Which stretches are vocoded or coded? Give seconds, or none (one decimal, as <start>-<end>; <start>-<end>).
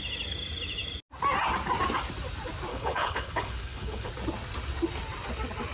2.7-4.1